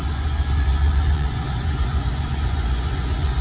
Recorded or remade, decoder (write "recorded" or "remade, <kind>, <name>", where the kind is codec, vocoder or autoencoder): remade, vocoder, Vocos